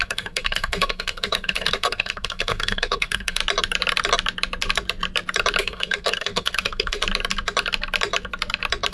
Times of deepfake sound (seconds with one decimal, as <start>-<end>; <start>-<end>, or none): 0.0-3.4; 5.6-7.0

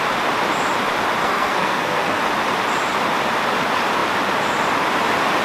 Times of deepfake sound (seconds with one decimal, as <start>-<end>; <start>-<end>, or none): 1.2-2.2

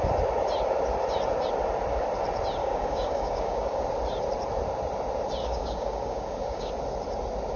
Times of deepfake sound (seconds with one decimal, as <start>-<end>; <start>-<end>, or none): 2.6-3.8; 5.4-6.7

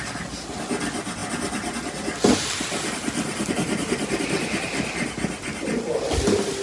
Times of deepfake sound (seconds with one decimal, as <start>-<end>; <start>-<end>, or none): none